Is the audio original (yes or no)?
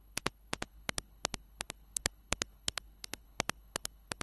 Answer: no